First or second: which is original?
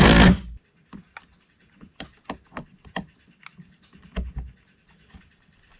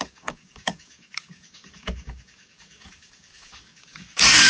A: first